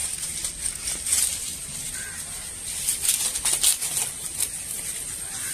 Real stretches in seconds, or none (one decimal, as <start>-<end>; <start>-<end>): 0.0-5.5